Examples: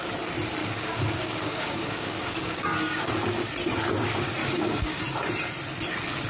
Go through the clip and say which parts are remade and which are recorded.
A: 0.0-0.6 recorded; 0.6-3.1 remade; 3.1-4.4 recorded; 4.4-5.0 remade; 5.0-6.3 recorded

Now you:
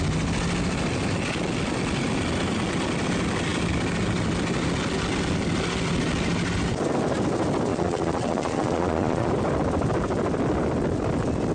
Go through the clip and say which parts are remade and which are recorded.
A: 0.0-7.7 recorded; 7.7-9.3 remade; 9.3-11.5 recorded

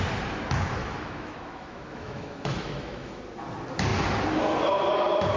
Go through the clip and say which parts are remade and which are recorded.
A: 0.0-0.8 recorded; 0.8-3.2 remade; 3.2-5.4 recorded

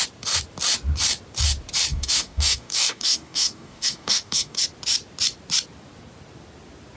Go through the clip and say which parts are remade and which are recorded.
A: 0.0-1.9 recorded; 1.9-4.6 remade; 4.6-7.0 recorded

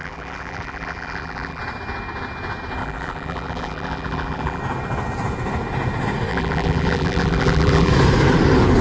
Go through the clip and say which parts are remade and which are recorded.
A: 0.0-1.6 remade; 1.6-2.8 recorded; 2.8-4.6 remade; 4.6-6.3 recorded; 6.3-7.9 remade; 7.9-8.8 recorded

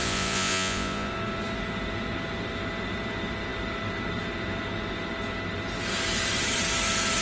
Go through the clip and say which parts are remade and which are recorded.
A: 0.0-1.1 remade; 1.1-7.2 recorded

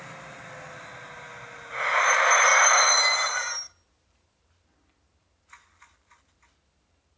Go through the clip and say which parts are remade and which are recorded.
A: 0.0-7.2 recorded

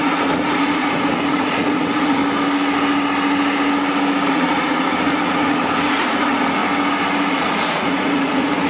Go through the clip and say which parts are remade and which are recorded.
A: 0.0-2.2 remade; 2.2-4.3 recorded; 4.3-6.6 remade; 6.6-7.3 recorded; 7.3-8.7 remade